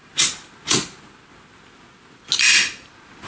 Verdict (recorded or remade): recorded